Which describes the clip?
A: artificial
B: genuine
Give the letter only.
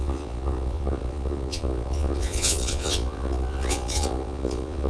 A